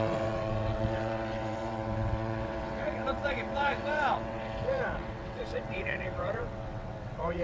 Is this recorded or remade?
remade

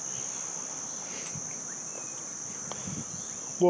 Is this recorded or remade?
recorded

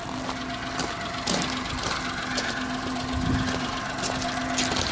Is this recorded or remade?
recorded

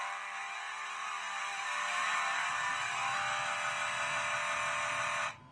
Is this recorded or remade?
recorded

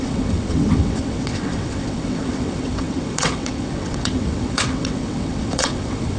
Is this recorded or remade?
remade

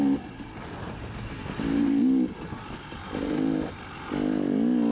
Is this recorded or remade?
recorded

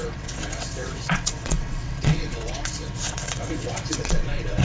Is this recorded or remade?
remade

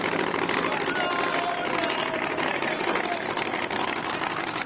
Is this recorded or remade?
recorded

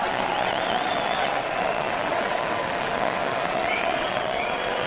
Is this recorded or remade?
remade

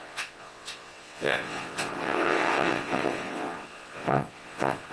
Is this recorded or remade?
remade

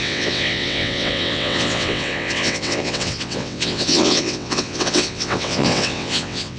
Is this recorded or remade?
remade